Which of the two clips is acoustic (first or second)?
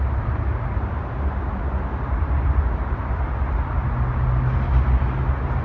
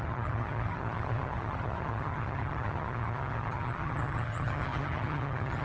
first